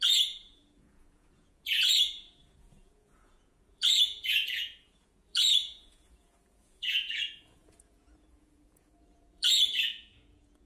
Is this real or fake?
fake